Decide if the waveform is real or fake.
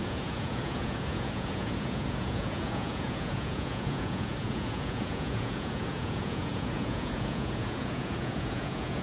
fake